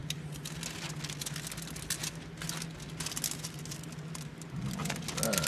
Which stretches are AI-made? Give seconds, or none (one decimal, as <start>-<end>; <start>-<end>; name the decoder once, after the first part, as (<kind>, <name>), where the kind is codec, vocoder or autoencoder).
none